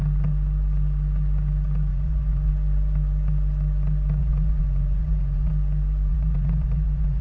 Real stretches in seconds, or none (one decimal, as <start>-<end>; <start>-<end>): 0.0-1.9; 2.5-4.2; 5.5-6.1